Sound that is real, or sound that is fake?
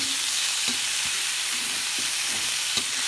real